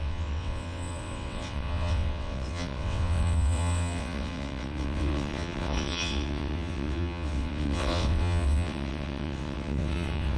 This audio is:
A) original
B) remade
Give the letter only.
B